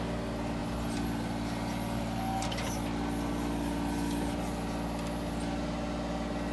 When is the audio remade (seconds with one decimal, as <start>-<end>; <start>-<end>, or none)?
none